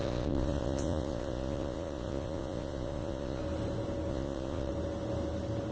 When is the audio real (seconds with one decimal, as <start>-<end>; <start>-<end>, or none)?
3.4-4.1; 4.7-5.7